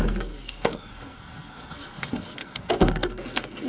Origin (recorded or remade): remade